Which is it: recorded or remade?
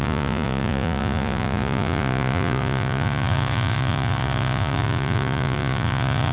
remade